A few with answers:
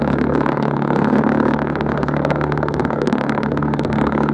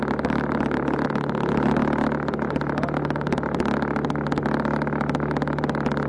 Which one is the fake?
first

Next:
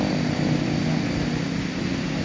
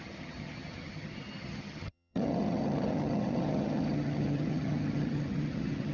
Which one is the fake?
second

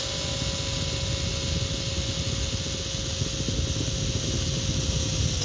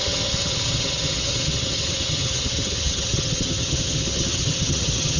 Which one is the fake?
second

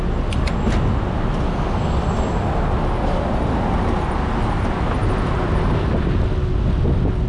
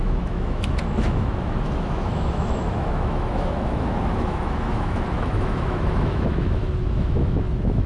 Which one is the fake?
second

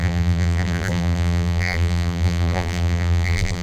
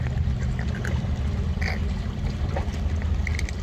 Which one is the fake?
first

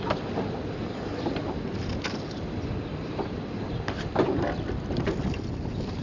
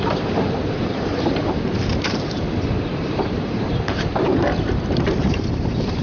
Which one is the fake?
second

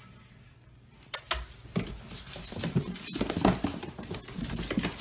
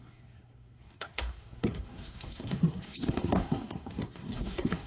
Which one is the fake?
second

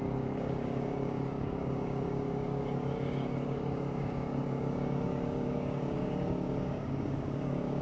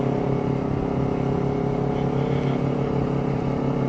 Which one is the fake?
first